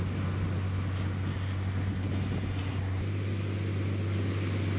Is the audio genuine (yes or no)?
yes